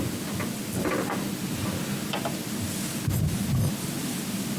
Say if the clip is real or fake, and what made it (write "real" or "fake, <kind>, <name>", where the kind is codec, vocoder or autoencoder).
real